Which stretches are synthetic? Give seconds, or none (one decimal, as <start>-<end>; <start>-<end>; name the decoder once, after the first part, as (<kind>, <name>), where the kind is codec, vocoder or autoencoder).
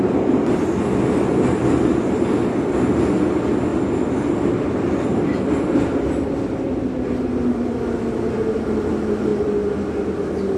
none